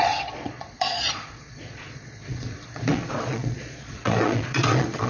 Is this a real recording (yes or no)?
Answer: no